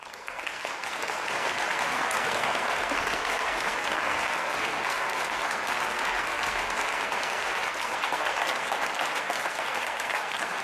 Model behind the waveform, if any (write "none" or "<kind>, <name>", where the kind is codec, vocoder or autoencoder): codec, SNAC